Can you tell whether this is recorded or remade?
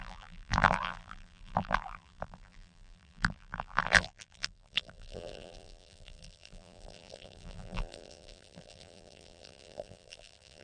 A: remade